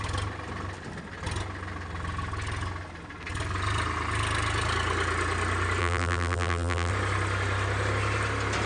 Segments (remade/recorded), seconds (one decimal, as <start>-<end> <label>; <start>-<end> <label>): 0.0-5.8 recorded; 5.8-6.9 remade; 6.9-8.7 recorded